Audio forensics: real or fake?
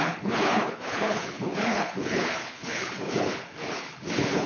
fake